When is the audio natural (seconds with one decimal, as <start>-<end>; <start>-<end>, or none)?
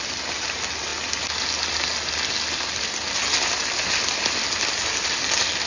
0.0-5.7